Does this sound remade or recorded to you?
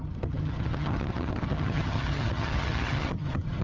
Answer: remade